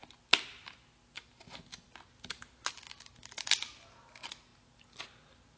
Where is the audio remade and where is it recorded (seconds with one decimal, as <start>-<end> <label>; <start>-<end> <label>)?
0.0-5.6 recorded